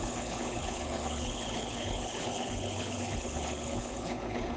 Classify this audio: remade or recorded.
remade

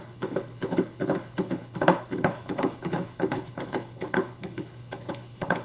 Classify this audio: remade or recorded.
remade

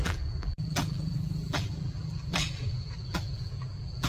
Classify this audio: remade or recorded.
remade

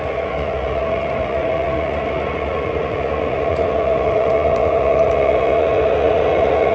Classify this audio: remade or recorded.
remade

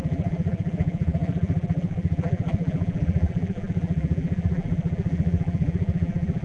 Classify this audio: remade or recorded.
remade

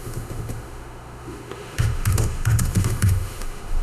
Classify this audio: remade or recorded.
remade